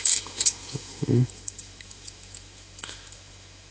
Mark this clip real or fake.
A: fake